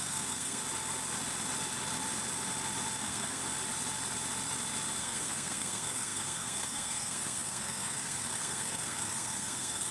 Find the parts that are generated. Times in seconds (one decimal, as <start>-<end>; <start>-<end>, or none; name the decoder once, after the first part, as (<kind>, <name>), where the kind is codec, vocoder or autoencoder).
0.0-0.6 (codec, SNAC); 3.0-3.4; 5.0-9.9